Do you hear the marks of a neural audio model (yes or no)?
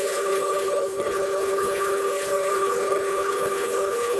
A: yes